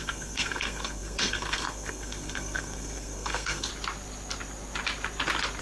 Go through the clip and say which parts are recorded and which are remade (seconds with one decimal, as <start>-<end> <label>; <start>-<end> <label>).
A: 0.0-3.7 remade; 3.7-5.6 recorded